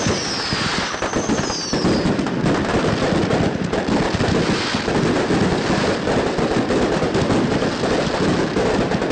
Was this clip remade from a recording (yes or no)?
no